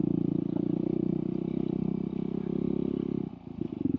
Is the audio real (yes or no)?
yes